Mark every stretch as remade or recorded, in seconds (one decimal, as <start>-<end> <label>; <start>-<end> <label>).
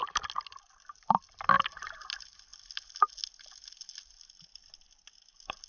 0.0-5.7 recorded